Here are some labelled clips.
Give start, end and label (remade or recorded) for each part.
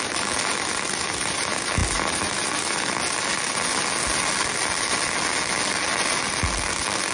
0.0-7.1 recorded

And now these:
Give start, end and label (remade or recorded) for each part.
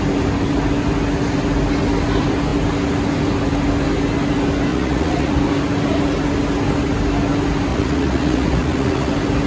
0.0-4.7 recorded; 4.7-5.3 remade; 5.3-7.7 recorded; 7.7-9.1 remade; 9.1-9.5 recorded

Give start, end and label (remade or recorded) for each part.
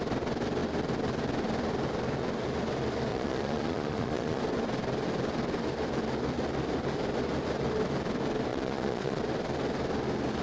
0.0-3.1 recorded; 3.1-4.4 remade; 4.4-8.5 recorded; 8.5-9.2 remade; 9.2-10.4 recorded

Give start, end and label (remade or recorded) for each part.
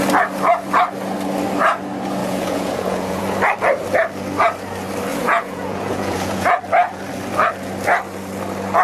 0.0-2.2 recorded; 2.2-3.2 remade; 3.2-5.1 recorded; 5.1-6.6 remade; 6.6-8.8 recorded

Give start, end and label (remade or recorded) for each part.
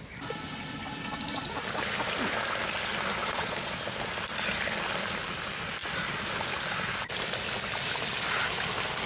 0.0-3.2 recorded; 3.2-3.8 remade; 3.8-9.1 recorded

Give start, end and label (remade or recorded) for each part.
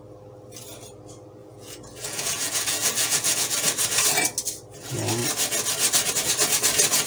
0.0-1.4 recorded; 1.4-3.6 remade; 3.6-7.1 recorded